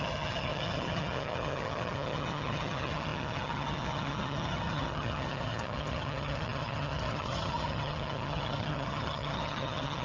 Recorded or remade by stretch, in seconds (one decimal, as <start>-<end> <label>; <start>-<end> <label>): 0.0-10.0 remade